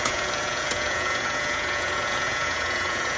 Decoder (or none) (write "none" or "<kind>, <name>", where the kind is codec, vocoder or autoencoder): vocoder, Vocos